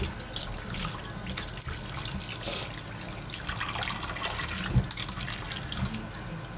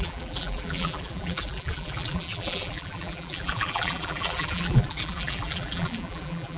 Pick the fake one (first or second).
second